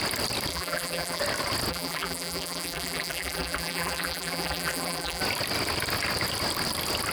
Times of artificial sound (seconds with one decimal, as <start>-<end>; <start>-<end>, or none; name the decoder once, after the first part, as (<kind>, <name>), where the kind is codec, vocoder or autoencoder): 0.5-1.2 (vocoder, BigVGAN v2); 1.7-5.2